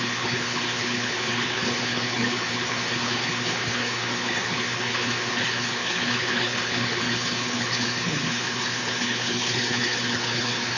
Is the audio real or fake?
fake